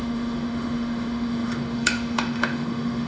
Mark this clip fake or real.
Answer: fake